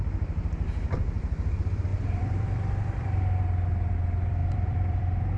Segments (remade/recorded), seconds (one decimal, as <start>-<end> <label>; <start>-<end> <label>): 0.0-1.9 recorded; 1.9-3.4 remade; 3.4-4.4 recorded; 4.4-5.0 remade; 5.0-5.4 recorded